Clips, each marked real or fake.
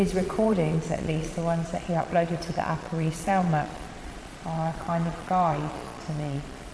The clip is fake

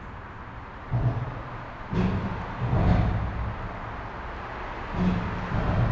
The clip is real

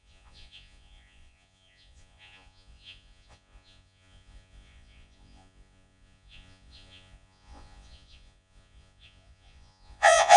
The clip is fake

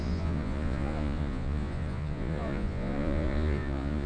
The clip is fake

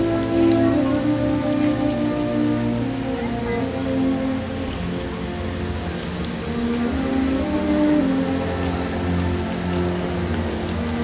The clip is real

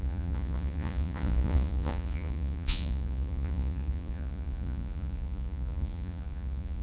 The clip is fake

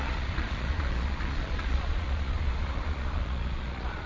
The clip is fake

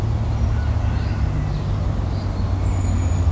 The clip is real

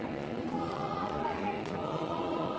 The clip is fake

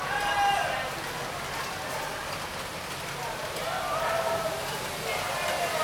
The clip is real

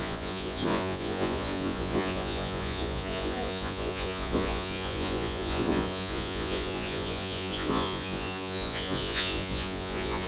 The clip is fake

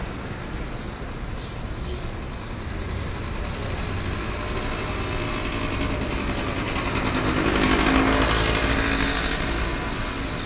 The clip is real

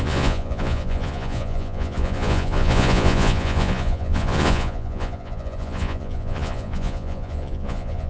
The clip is fake